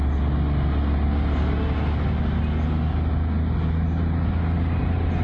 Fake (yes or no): no